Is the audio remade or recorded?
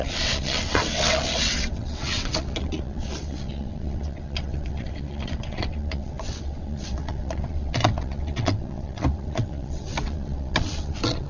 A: remade